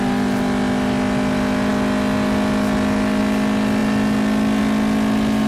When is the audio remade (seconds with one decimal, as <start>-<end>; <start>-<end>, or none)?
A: none

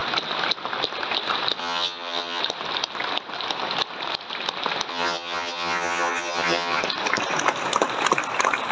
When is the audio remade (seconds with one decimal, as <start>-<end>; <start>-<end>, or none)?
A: 1.6-2.4; 4.9-6.8

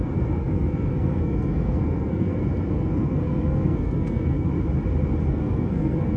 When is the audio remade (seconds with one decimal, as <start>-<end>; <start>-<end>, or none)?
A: 0.0-4.5; 5.3-6.2

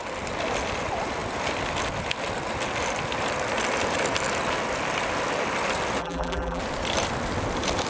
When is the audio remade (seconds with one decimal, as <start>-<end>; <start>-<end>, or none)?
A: 6.0-6.6

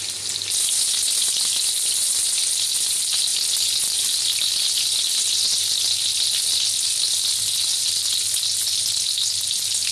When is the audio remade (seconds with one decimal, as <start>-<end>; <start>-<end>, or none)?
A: none